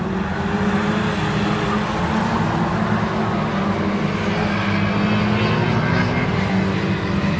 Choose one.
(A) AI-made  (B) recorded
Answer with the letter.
B